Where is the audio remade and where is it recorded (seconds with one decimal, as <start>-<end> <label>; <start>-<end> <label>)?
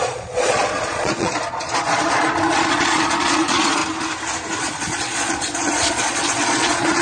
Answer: 0.0-3.8 remade; 3.8-4.6 recorded; 4.6-7.0 remade